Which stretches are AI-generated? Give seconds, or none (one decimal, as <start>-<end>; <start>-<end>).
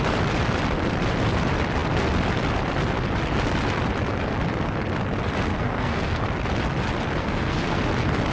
5.5-6.2; 7.2-7.8